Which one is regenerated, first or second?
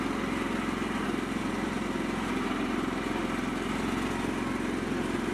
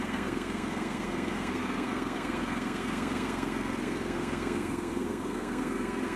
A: second